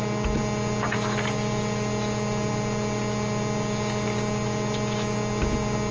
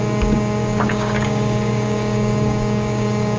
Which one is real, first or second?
first